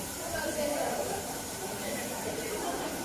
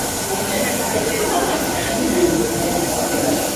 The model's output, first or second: first